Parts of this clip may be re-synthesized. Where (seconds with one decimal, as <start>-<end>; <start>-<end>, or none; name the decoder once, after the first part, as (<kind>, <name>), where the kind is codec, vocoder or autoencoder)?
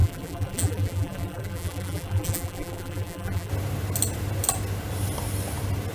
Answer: 0.0-3.5 (vocoder, BigVGAN v2)